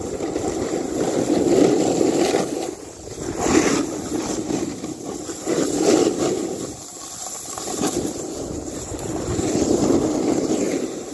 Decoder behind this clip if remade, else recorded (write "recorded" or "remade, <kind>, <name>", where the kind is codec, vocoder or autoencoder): recorded